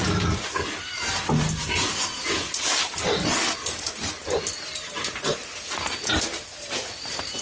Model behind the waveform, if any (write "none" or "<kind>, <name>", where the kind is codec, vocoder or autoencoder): none